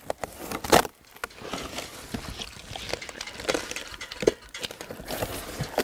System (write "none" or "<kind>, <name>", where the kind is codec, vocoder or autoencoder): none